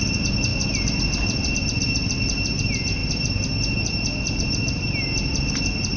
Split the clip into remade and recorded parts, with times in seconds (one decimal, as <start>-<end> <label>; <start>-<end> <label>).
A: 0.0-6.0 recorded